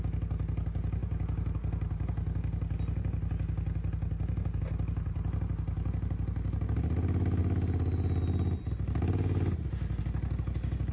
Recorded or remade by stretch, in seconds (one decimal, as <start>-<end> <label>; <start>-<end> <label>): 0.0-10.9 recorded